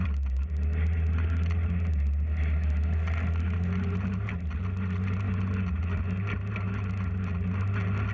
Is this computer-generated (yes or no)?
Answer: no